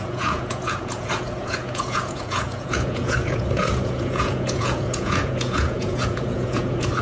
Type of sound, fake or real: fake